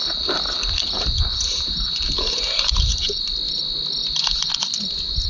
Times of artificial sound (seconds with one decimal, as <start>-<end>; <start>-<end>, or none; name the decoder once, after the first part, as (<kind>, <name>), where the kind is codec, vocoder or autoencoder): 0.0-3.2 (vocoder, BigVGAN v2); 4.0-4.5